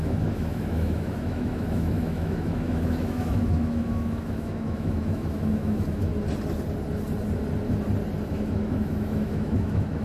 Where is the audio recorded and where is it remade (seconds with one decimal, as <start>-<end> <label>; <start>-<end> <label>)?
0.0-6.1 remade; 6.1-8.3 recorded; 8.3-10.0 remade